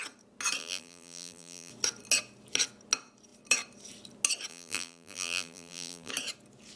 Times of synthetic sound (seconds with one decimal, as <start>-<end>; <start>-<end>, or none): 0.6-1.7; 4.5-6.1